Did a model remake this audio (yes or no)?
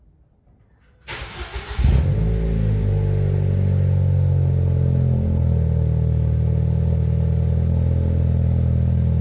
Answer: no